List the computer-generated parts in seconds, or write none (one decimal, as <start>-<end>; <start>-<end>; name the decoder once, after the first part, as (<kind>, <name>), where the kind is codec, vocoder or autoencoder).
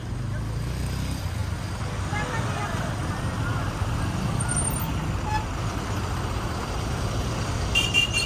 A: none